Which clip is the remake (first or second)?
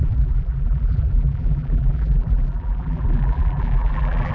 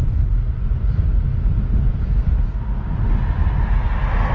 first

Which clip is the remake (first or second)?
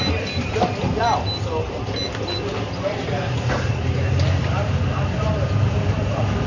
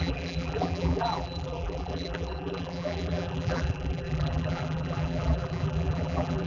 second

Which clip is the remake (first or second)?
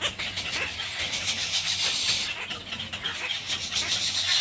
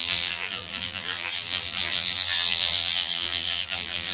second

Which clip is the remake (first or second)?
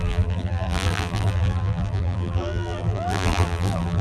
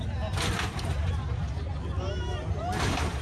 first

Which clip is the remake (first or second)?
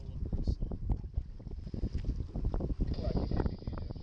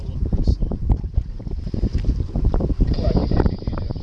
second